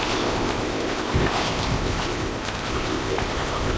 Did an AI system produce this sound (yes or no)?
yes